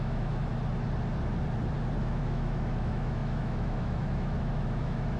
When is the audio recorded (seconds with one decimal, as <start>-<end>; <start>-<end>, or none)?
0.5-2.0